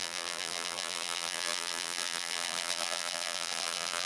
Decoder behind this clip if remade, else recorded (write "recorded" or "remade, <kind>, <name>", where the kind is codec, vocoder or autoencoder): remade, vocoder, BigVGAN v2